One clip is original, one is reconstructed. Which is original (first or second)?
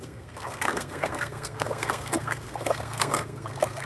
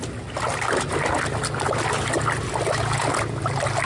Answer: second